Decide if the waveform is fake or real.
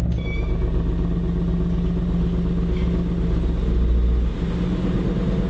real